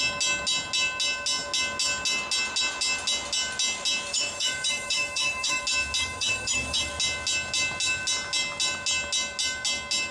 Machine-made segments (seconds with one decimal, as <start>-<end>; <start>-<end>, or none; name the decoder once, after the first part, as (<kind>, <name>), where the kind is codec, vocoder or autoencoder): 4.1-5.6 (autoencoder, DAC-VAE); 6.0-6.9